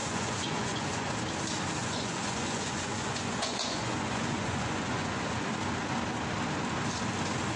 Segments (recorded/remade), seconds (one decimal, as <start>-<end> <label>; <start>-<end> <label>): 0.0-1.1 remade; 1.1-1.8 recorded; 1.8-5.1 remade; 5.1-7.6 recorded